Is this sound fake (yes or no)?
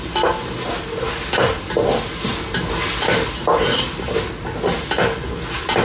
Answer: no